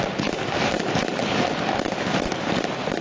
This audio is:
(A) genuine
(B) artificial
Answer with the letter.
A